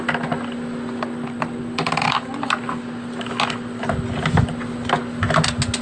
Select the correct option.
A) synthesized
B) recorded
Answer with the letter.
B